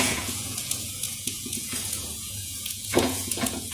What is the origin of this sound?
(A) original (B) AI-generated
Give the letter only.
B